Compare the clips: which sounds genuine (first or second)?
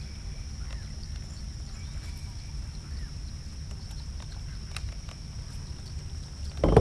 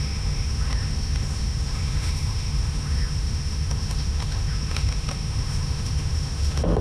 first